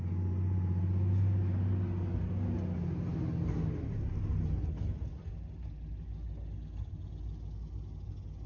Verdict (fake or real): real